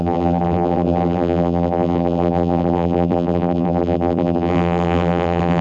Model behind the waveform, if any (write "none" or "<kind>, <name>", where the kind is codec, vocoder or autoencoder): vocoder, BigVGAN v2